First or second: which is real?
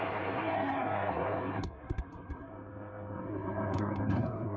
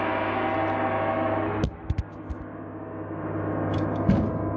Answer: second